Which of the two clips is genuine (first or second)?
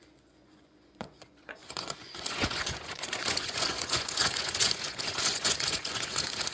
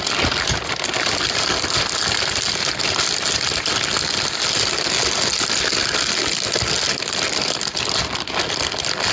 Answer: second